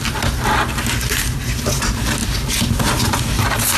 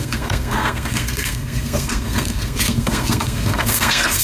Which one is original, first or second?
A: first